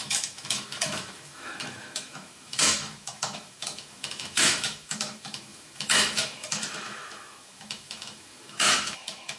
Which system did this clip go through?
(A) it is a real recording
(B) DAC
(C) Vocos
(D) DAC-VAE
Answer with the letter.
D